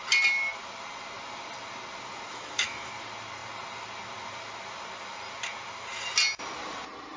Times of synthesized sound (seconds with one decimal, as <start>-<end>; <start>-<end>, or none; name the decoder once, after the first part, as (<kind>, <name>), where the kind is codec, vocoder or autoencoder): 2.3-2.9 (autoencoder, DAC-VAE)